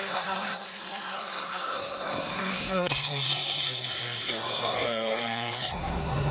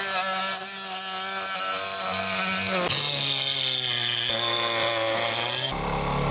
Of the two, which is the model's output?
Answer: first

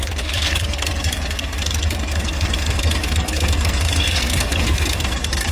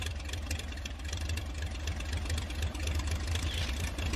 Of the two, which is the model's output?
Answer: first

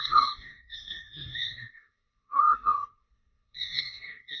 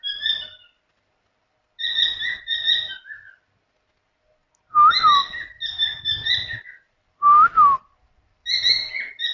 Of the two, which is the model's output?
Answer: first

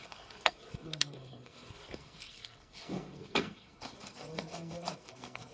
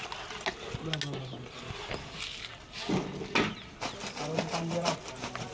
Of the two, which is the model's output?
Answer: first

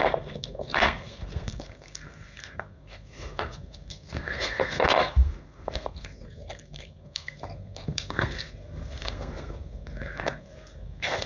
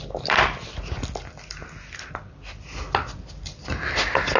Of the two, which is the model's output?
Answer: first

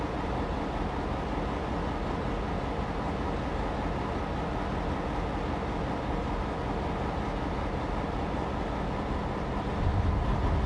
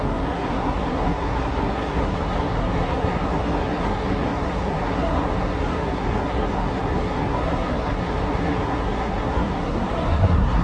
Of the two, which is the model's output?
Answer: second